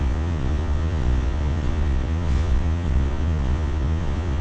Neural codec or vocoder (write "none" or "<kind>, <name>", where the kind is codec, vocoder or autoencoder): vocoder, Vocos